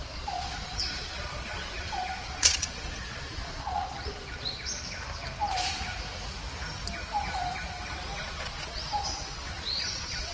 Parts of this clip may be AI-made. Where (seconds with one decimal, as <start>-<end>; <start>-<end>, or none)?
0.0-4.7; 8.2-10.3